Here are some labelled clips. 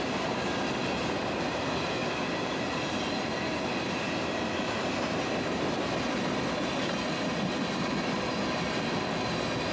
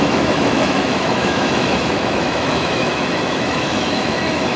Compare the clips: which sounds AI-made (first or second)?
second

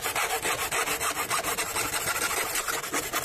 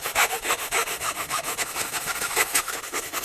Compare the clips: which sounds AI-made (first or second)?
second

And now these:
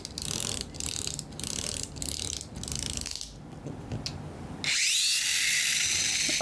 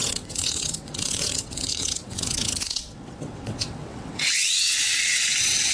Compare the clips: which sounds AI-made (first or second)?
second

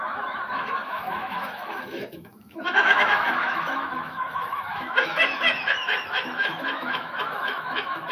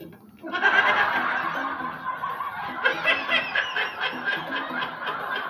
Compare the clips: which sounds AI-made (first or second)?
first